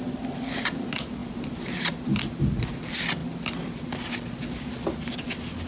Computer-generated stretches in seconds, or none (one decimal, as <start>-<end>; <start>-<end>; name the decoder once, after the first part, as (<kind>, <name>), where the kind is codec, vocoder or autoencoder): none